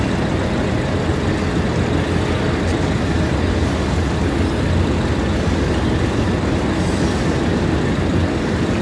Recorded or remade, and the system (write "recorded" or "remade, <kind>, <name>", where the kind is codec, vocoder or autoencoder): recorded